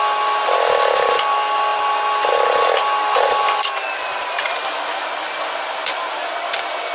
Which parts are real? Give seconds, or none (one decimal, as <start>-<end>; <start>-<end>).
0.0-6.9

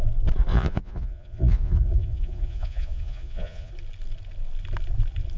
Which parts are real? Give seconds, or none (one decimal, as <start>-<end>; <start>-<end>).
0.0-0.5; 3.7-5.4

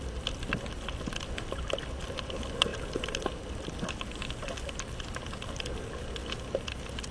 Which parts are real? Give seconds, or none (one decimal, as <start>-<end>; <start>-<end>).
0.0-7.1